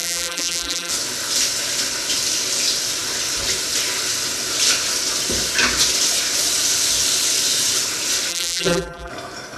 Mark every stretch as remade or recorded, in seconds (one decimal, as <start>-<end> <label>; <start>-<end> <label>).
0.0-0.9 remade; 0.9-8.3 recorded; 8.3-9.1 remade; 9.1-9.6 recorded